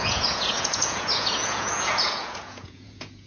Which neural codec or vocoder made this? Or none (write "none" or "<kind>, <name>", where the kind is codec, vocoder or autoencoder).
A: vocoder, Vocos